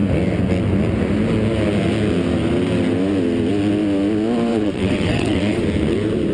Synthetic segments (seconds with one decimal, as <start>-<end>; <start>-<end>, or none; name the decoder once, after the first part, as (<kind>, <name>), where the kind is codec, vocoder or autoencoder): 4.5-5.6 (vocoder, WaveNeXt)